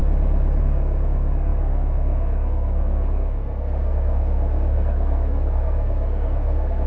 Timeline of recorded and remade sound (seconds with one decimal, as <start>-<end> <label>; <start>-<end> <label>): 0.0-0.6 recorded; 0.6-6.9 remade